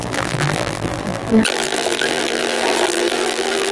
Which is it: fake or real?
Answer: fake